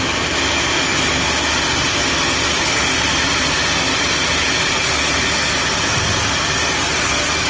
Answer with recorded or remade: recorded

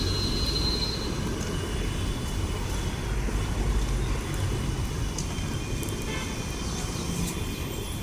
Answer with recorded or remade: recorded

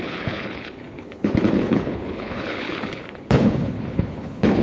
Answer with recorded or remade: remade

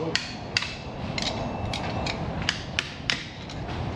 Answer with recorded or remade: remade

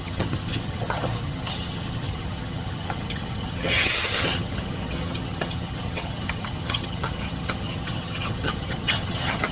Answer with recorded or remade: remade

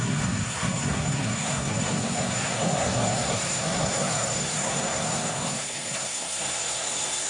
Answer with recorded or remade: remade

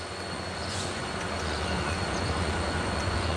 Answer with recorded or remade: remade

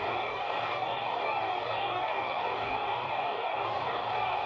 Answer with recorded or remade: remade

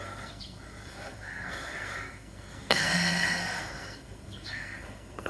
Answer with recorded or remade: remade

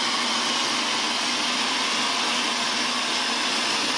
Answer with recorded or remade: recorded